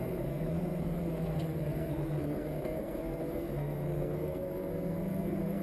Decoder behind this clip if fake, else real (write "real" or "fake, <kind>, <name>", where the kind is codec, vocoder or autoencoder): fake, codec, SNAC